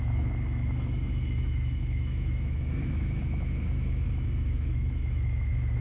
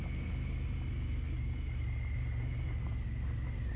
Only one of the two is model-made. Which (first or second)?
first